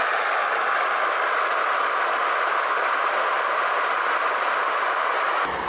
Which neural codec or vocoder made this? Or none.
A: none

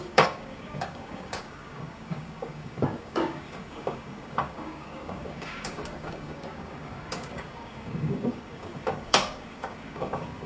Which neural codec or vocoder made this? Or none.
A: codec, DAC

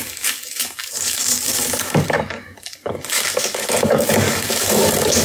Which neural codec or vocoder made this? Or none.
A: codec, DAC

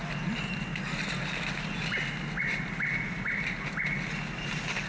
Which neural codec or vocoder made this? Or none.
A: none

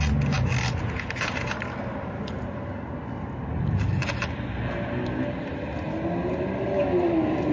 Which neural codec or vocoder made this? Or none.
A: none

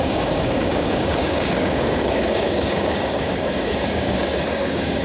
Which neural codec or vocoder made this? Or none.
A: codec, DAC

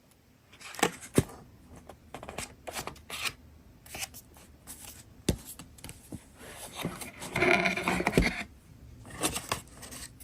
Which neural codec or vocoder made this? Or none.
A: none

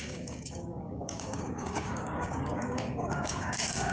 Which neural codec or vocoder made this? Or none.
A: codec, DAC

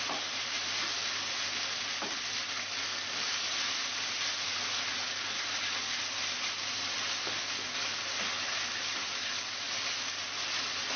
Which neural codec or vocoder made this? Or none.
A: none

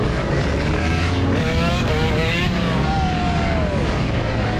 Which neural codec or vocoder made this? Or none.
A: codec, DAC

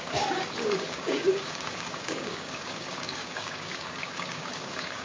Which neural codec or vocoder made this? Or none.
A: codec, DAC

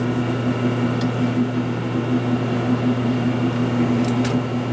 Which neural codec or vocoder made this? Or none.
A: none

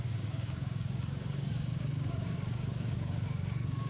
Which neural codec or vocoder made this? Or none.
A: codec, DAC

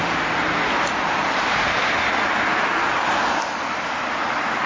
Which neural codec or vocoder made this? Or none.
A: none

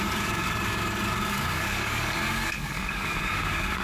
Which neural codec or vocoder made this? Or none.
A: codec, DAC